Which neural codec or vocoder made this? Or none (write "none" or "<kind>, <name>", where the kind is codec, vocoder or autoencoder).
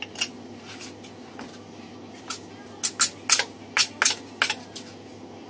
none